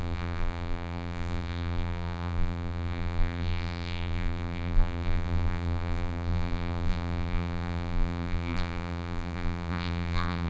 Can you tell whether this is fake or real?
fake